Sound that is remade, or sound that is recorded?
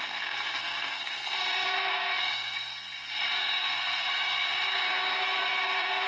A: remade